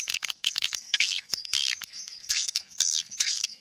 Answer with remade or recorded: remade